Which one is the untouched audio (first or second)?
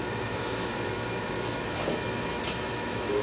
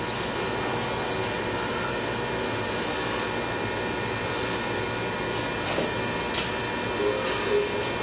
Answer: second